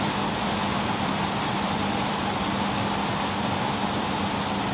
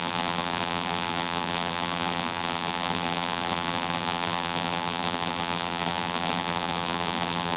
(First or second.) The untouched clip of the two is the first